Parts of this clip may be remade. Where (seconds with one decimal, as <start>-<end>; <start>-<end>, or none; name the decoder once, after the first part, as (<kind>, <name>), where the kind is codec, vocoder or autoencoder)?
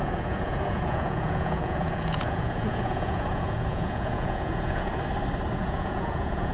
0.0-4.9 (vocoder, Vocos); 5.5-6.5